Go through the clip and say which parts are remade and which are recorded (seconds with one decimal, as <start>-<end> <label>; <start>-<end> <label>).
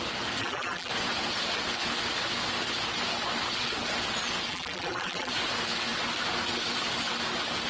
0.0-0.4 recorded; 0.4-0.9 remade; 0.9-4.5 recorded; 4.5-5.3 remade; 5.3-7.7 recorded